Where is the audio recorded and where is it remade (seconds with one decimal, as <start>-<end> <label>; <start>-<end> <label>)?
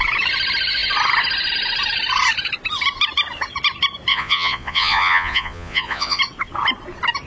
0.0-4.1 recorded; 4.1-6.2 remade; 6.2-7.3 recorded